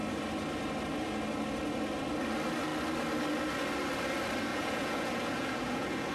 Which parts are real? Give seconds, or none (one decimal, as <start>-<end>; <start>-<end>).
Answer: 0.0-4.5

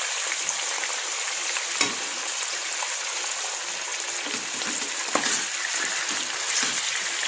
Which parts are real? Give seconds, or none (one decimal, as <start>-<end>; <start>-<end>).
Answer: 0.0-7.3